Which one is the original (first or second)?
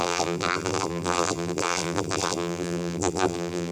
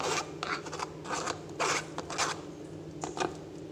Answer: second